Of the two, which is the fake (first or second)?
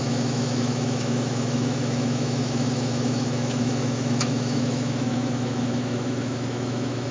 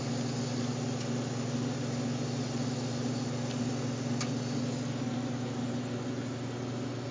first